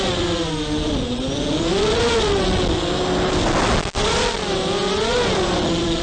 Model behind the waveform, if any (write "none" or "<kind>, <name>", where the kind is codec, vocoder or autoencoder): none